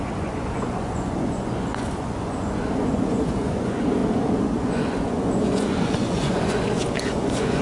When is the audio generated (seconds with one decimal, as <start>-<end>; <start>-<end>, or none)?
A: 0.0-7.6